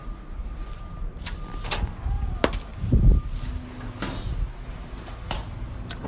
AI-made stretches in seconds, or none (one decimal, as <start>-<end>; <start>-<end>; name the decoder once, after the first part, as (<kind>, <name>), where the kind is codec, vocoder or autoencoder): 0.0-1.4 (vocoder, BigVGAN v2); 2.7-3.4; 4.1-6.1